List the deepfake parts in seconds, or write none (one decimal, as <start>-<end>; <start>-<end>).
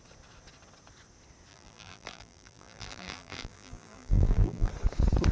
1.5-4.7